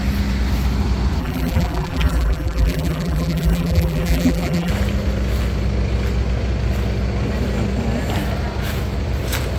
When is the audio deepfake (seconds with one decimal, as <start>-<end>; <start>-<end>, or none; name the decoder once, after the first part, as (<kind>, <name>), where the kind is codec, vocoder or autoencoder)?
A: 1.2-4.7 (vocoder, BigVGAN v2)